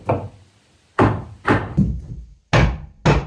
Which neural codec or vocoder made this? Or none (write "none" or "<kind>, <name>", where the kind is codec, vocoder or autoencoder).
none